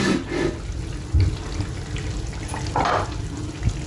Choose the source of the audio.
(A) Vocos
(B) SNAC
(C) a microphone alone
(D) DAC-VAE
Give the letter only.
C